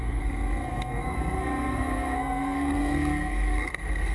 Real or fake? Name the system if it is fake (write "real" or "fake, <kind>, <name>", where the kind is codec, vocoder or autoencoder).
fake, codec, SNAC